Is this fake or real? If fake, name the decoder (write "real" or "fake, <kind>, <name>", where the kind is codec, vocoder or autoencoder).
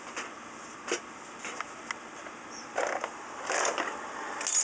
real